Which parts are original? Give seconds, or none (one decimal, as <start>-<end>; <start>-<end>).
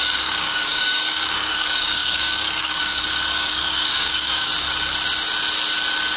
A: 4.5-6.2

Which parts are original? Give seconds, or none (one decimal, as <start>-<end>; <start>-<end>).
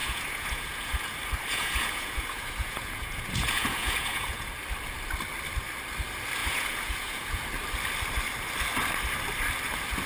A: 1.1-1.5; 4.5-6.4; 7.4-10.1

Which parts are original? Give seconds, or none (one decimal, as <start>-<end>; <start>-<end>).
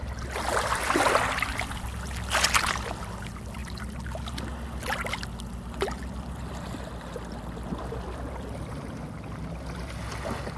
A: 0.0-10.6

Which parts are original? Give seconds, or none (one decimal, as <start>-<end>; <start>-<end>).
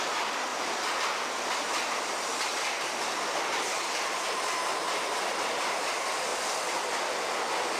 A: 0.0-7.8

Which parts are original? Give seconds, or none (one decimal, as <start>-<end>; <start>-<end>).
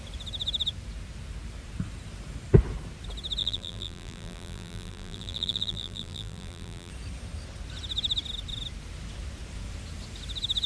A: 0.0-3.4; 6.9-10.7